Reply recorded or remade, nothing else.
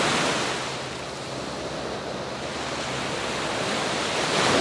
recorded